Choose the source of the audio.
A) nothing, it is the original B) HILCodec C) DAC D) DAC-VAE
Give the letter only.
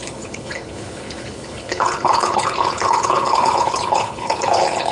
B